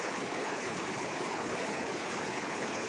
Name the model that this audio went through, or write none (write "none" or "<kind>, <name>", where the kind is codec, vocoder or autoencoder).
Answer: codec, HILCodec